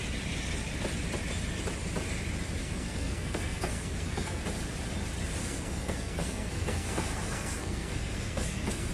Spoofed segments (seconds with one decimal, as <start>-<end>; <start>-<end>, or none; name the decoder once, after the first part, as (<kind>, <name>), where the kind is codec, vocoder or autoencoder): 2.6-4.4 (codec, SNAC); 5.4-8.9